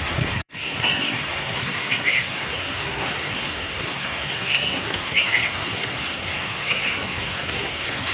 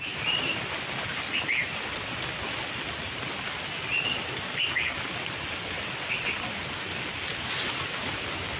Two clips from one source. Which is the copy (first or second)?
first